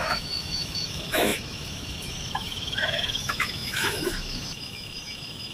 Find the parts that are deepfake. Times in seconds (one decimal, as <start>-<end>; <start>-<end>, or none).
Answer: 0.0-5.5